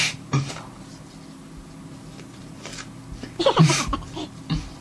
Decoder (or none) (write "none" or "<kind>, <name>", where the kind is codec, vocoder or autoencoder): none